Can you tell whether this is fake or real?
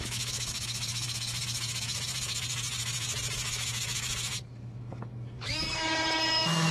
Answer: fake